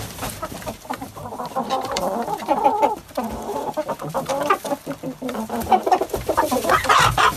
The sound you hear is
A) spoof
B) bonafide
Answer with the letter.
A